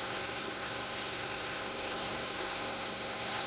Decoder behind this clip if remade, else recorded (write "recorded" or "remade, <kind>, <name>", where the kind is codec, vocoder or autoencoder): remade, codec, SNAC